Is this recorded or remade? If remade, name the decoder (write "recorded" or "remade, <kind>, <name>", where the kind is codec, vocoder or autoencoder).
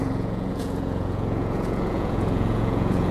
remade, vocoder, Vocos